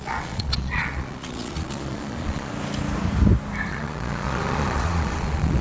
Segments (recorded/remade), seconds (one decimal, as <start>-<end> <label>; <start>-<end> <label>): 0.0-2.5 remade; 2.5-3.7 recorded; 3.7-5.6 remade